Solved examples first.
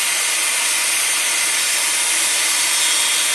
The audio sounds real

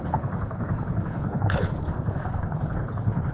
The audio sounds fake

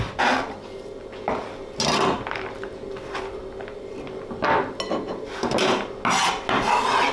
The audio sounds real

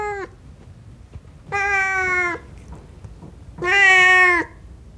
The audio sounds real